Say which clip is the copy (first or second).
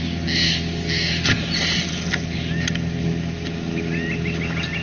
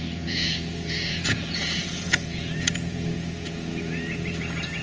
second